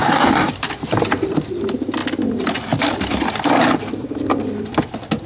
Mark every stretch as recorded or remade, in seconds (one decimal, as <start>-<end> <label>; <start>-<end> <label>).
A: 0.0-0.5 remade; 0.5-5.3 recorded